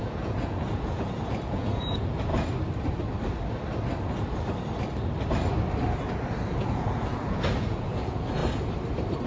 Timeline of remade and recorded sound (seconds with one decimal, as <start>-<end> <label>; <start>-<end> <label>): 0.0-2.3 remade; 2.3-6.6 recorded; 6.6-8.4 remade; 8.4-9.3 recorded